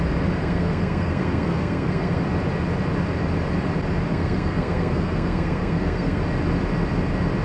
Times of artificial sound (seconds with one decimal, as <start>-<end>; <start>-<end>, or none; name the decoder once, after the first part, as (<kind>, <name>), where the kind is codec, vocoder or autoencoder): 0.4-2.2 (codec, SNAC); 4.1-6.2